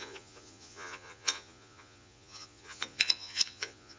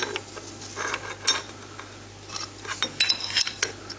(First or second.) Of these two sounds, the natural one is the second